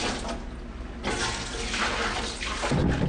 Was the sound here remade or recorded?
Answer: recorded